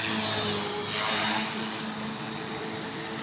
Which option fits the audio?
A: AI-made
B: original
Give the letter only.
B